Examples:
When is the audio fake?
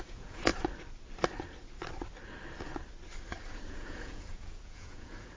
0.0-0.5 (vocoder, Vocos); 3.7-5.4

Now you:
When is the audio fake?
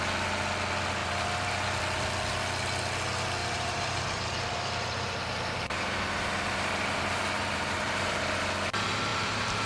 1.0-1.8 (vocoder, BigVGAN v2); 3.4-8.4; 9.1-9.7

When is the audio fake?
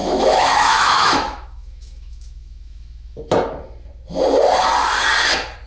0.0-3.2 (autoencoder, DAC-VAE)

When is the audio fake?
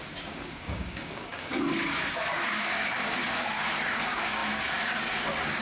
0.0-5.6 (codec, DAC)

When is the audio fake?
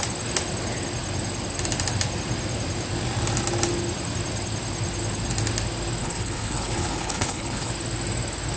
6.0-7.7 (codec, HILCodec)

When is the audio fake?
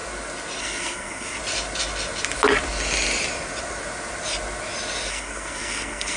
0.6-1.4 (codec, SNAC); 5.1-6.2